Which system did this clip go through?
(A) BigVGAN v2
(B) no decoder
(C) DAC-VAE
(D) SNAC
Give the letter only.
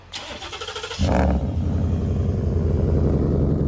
A